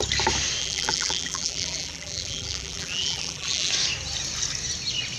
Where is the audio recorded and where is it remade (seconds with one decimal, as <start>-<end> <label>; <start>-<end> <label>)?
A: 0.0-0.6 recorded; 0.6-3.7 remade; 3.7-5.2 recorded